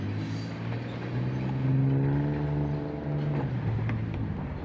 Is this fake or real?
real